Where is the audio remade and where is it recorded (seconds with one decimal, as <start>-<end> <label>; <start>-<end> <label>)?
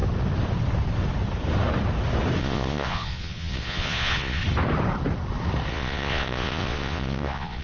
0.0-2.4 recorded; 2.4-4.4 remade; 4.4-5.7 recorded; 5.7-7.6 remade